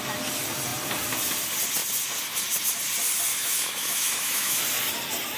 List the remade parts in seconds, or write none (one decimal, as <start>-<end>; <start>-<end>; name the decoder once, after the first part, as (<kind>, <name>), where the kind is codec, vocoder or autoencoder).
3.3-4.6 (autoencoder, DAC-VAE)